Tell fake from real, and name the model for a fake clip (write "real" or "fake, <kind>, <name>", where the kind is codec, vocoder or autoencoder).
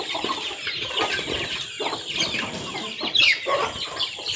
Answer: real